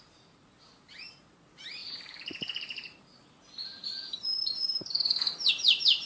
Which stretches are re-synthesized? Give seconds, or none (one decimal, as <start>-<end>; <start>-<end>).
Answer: none